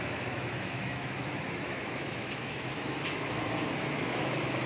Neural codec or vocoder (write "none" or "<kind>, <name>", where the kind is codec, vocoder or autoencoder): autoencoder, DAC-VAE